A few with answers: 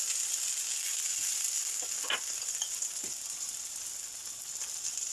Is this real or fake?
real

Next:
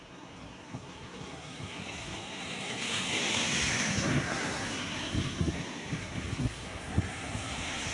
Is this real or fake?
fake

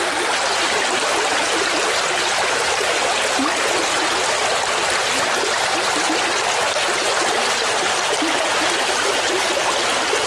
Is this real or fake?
real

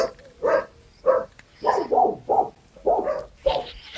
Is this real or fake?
real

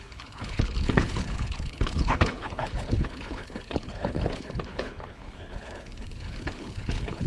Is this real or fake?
fake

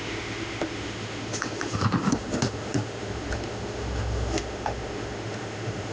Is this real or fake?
fake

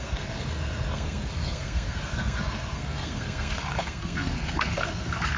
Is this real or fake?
fake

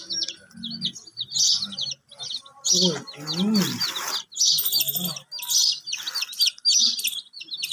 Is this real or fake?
real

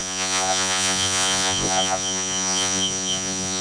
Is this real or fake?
fake